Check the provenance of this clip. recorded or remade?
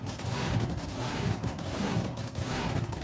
remade